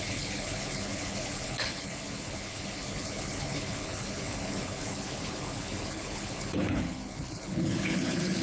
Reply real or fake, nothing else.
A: fake